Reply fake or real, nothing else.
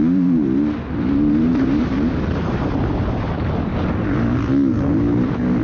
real